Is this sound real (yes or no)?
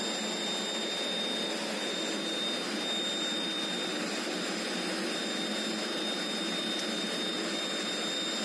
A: yes